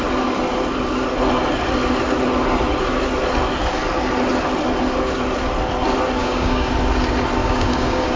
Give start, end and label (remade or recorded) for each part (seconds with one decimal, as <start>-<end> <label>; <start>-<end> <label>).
0.0-6.2 recorded; 6.2-6.7 remade; 6.7-7.4 recorded; 7.4-8.2 remade